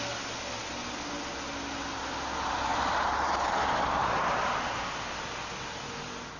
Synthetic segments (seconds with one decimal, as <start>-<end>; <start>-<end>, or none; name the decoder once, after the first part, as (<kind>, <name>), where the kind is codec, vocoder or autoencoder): 2.7-4.5 (vocoder, BigVGAN v2)